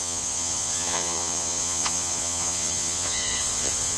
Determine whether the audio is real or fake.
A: fake